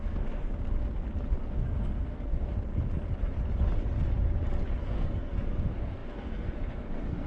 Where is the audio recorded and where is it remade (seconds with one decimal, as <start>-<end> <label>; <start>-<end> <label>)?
0.0-0.5 remade; 0.5-1.4 recorded; 1.4-2.5 remade; 2.5-4.8 recorded; 4.8-7.3 remade

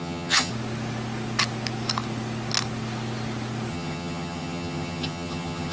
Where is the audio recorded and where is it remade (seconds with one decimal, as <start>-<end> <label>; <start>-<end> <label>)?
0.0-0.5 remade; 0.5-3.7 recorded; 3.7-5.7 remade

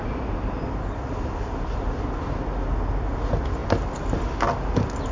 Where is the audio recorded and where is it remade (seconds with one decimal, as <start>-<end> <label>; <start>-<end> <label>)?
0.0-5.1 recorded